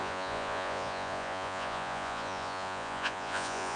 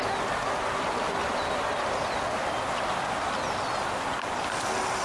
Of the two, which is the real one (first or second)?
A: second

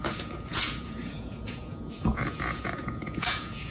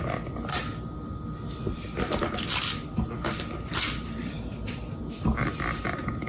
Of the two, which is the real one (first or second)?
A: second